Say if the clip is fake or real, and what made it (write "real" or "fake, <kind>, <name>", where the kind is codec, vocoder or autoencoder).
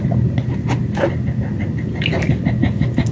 real